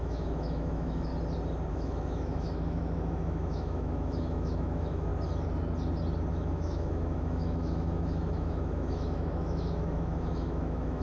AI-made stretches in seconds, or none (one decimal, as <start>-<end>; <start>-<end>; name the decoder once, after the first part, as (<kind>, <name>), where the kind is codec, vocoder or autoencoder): 0.0-1.1 (autoencoder, DAC-VAE); 1.7-5.1; 6.3-11.0